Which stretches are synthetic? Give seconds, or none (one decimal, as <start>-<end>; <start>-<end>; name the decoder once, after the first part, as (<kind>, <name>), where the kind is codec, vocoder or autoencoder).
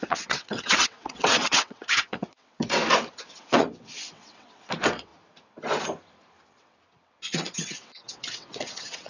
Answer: 0.0-2.8 (vocoder, WaveNeXt); 3.4-5.1; 6.5-9.1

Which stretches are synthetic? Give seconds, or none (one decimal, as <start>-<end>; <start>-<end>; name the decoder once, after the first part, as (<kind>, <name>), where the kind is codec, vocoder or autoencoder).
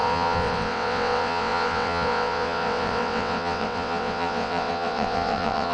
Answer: 0.0-5.7 (vocoder, WaveNeXt)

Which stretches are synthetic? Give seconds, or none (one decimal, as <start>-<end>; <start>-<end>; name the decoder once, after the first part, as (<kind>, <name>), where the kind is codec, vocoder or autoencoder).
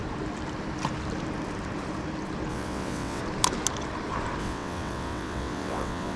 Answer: 2.5-3.2 (vocoder, WaveNeXt); 4.4-6.2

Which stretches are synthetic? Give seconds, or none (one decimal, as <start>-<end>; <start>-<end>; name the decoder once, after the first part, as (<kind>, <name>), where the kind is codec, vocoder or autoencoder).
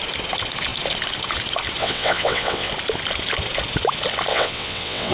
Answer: 1.8-2.7 (vocoder, WaveNeXt); 4.3-5.1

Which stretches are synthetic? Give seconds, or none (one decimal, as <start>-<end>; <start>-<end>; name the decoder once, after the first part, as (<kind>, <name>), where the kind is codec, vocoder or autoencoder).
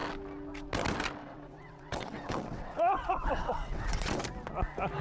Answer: 1.2-4.2 (vocoder, WaveNeXt)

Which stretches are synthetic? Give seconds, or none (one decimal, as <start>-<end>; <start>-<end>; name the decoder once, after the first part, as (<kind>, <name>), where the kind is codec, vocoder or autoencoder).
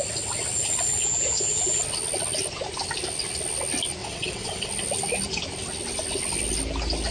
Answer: 4.0-4.7 (vocoder, WaveNeXt)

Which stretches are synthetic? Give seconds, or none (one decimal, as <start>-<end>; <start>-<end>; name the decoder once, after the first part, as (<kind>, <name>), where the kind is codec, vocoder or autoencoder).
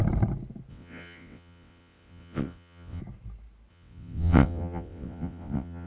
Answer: 0.7-3.0 (vocoder, WaveNeXt); 3.7-5.9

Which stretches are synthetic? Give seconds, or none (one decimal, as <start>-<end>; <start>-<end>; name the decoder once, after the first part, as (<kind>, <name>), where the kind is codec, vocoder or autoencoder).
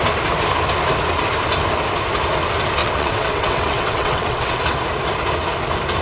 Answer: 2.8-4.6 (vocoder, WaveNeXt)